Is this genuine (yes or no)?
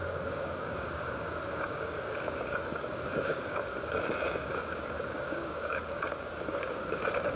no